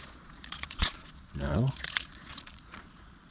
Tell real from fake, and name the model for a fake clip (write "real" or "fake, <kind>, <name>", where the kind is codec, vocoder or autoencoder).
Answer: fake, vocoder, Vocos